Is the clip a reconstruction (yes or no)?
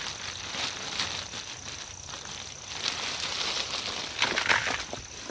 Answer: no